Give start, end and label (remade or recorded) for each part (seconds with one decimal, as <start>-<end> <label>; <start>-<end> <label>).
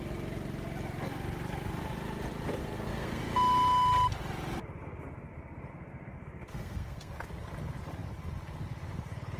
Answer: 0.0-2.6 recorded; 2.6-3.2 remade; 3.2-5.7 recorded; 5.7-7.1 remade; 7.1-9.4 recorded